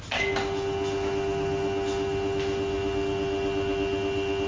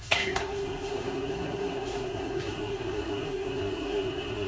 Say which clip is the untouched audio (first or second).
first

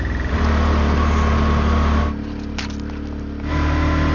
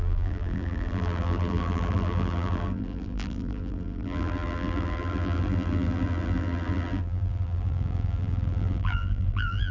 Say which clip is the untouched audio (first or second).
first